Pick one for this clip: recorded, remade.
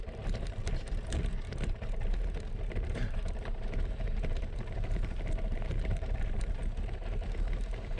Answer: remade